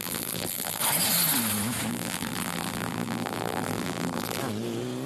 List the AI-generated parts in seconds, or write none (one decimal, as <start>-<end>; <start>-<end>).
0.0-0.8; 1.9-4.4